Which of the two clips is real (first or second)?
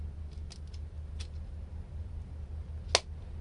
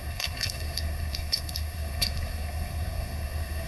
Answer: first